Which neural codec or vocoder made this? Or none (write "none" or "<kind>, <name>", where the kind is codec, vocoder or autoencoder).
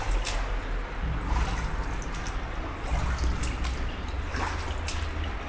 none